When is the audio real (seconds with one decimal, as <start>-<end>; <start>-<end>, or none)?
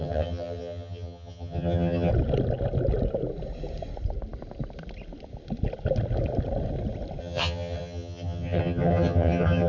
2.1-7.2